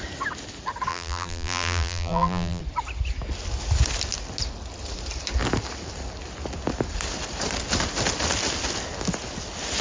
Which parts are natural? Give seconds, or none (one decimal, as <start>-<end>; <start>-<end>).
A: 0.0-0.9; 2.6-9.8